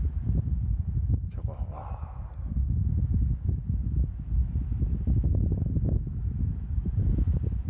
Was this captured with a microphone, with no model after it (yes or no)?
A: yes